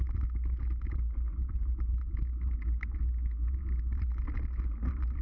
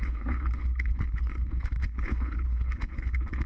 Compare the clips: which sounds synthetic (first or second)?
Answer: second